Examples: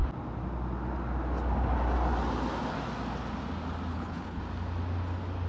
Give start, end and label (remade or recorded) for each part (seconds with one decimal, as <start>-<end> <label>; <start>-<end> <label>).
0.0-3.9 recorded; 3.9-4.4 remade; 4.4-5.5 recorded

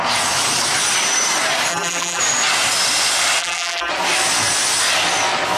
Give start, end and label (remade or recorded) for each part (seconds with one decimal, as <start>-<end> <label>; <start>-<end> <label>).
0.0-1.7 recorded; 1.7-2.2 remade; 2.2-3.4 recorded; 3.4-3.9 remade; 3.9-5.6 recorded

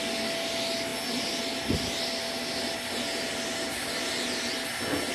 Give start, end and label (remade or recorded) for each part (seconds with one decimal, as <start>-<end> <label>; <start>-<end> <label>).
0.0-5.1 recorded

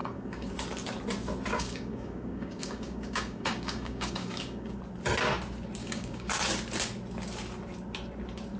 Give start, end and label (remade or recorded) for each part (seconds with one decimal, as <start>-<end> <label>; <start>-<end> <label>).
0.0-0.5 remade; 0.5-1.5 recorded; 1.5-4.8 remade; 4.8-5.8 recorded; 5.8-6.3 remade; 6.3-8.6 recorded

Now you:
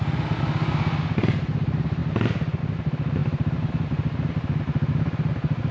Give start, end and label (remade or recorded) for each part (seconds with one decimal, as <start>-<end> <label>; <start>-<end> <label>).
0.0-5.7 recorded

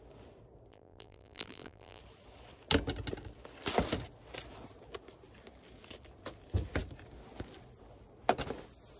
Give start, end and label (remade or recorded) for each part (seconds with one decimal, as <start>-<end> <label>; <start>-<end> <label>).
0.0-0.7 recorded; 0.7-2.0 remade; 2.0-9.0 recorded

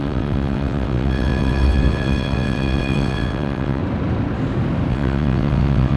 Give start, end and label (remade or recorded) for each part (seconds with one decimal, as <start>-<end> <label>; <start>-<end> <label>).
0.0-3.8 remade; 3.8-4.9 recorded; 4.9-6.0 remade

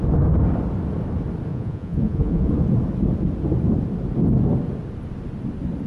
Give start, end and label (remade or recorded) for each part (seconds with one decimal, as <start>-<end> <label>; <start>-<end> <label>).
0.0-1.5 recorded; 1.5-2.5 remade; 2.5-5.9 recorded